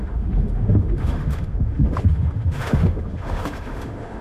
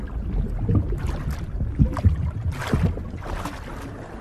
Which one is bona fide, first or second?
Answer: second